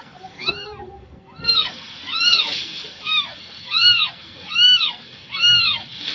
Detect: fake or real fake